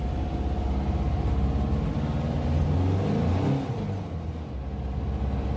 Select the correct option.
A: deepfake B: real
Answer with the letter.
B